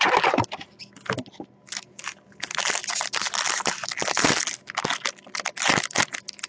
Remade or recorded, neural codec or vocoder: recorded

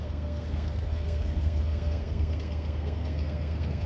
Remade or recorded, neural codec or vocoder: remade, codec, SNAC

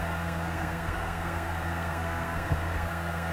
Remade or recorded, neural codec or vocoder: remade, codec, SNAC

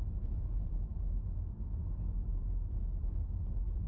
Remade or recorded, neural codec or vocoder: recorded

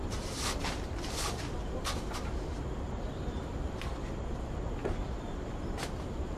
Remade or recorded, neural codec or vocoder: recorded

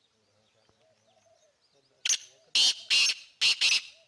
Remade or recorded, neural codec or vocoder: recorded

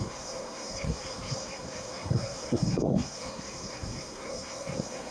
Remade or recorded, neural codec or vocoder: remade, codec, SNAC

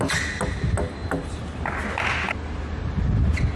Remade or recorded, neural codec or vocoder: recorded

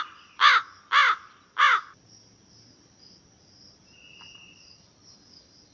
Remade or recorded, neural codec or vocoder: recorded